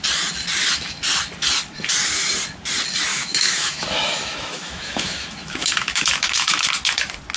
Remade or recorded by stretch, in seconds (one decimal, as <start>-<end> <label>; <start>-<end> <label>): 0.0-3.1 recorded; 3.1-6.7 remade; 6.7-7.4 recorded